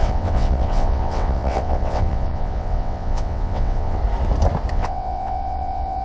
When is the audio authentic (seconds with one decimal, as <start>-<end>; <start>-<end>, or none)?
4.0-4.7